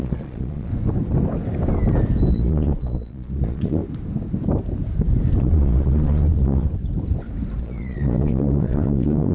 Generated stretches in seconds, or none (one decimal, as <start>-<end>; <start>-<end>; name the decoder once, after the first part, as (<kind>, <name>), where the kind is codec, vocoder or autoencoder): 0.0-0.7 (vocoder, Vocos); 2.3-3.8; 5.4-6.7; 7.6-9.3